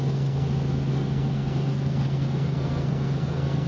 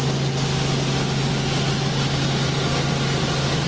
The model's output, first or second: first